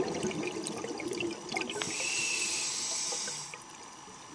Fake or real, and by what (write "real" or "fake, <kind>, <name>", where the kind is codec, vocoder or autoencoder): real